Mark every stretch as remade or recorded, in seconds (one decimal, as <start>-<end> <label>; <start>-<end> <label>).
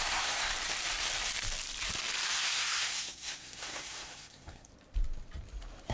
0.0-0.5 remade; 0.5-2.3 recorded; 2.3-4.7 remade; 4.7-5.9 recorded